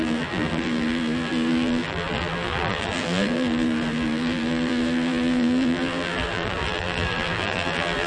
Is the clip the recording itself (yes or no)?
no